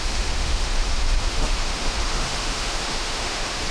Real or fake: fake